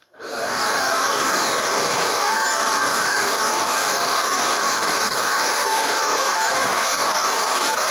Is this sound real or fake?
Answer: fake